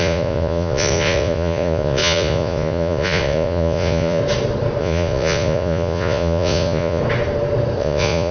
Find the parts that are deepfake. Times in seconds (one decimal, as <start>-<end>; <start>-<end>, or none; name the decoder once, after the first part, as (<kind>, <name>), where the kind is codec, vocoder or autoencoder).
0.0-4.2 (vocoder, Vocos); 4.8-7.0; 7.8-8.3